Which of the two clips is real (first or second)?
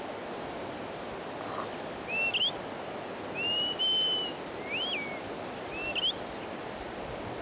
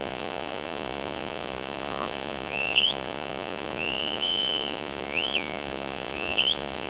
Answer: first